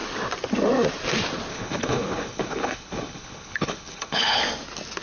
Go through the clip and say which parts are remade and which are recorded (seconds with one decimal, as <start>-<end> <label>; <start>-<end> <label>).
0.0-1.5 recorded; 1.5-4.4 remade; 4.4-5.0 recorded